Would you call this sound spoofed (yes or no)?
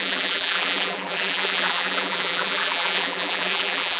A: yes